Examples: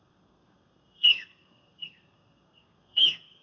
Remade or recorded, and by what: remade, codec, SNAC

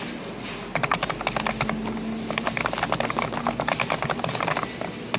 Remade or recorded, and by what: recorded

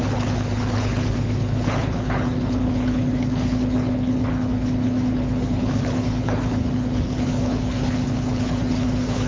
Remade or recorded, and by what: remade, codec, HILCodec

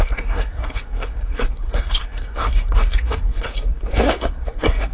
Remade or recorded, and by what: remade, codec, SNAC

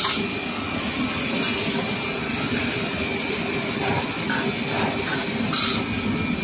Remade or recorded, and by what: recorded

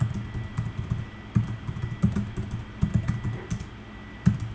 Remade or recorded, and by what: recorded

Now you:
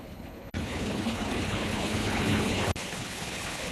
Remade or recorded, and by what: remade, codec, HILCodec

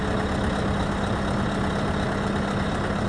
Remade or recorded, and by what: recorded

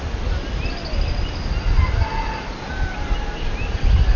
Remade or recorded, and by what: recorded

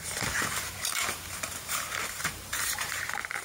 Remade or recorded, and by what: remade, vocoder, BigVGAN v2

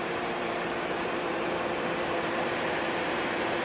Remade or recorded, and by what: remade, vocoder, BigVGAN v2